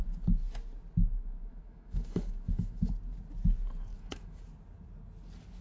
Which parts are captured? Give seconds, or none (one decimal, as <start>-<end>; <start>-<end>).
0.0-1.5; 2.9-3.9; 4.4-5.6

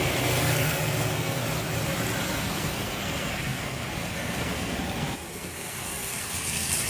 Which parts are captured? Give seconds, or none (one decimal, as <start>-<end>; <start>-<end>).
1.4-2.2

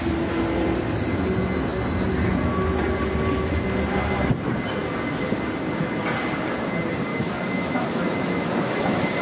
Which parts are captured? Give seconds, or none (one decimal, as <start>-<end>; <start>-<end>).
0.0-7.1

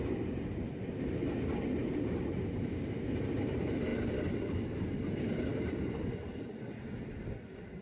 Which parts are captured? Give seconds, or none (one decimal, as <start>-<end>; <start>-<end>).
0.0-7.8

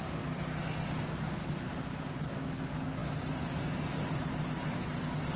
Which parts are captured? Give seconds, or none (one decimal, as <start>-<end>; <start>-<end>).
0.0-1.7; 2.4-5.4

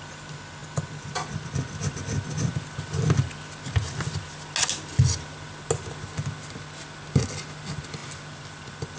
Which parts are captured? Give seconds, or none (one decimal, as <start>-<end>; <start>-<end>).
0.0-9.0

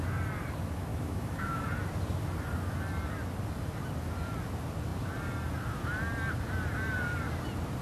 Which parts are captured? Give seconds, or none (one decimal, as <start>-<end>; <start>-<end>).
0.0-0.9; 1.6-7.8

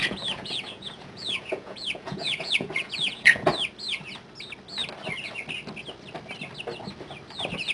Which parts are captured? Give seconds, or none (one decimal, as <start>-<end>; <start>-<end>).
3.5-7.7